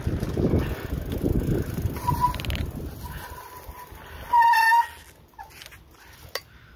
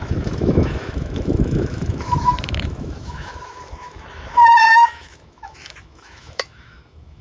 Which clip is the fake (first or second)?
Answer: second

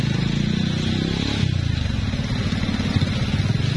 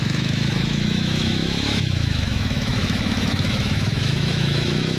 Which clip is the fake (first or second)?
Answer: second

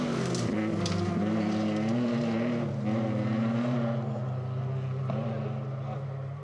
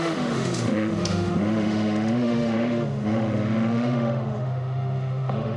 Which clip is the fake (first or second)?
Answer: second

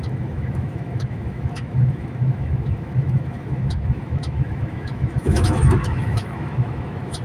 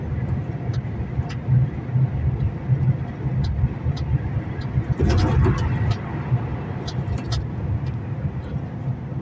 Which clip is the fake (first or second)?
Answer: first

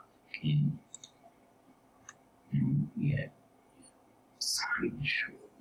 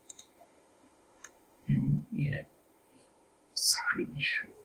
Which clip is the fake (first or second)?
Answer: second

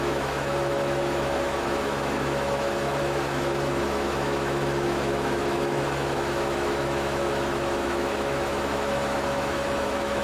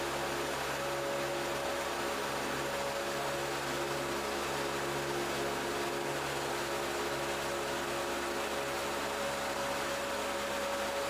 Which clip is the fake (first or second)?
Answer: first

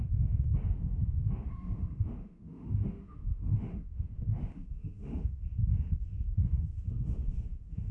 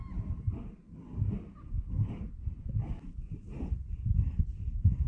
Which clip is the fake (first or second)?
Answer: first